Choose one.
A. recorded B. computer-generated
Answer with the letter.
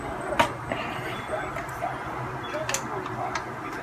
A